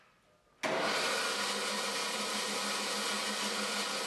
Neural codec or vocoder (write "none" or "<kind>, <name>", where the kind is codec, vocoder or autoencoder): none